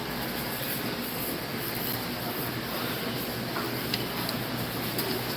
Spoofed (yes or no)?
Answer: no